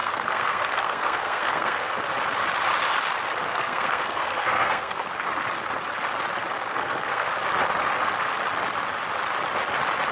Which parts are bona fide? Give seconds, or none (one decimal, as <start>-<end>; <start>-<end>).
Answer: 1.9-3.5; 5.1-6.7; 7.3-10.1